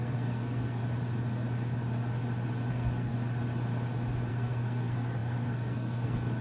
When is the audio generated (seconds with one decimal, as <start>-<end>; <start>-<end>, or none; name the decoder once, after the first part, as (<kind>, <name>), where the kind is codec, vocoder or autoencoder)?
0.0-0.8 (codec, SNAC); 2.7-3.1; 4.3-6.4